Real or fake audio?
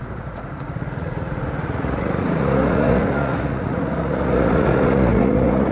fake